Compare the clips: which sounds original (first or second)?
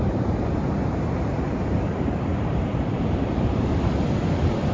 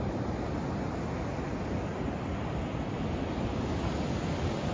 second